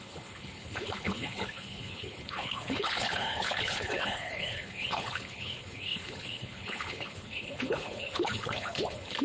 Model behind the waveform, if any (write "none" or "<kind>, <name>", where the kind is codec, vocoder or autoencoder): codec, HILCodec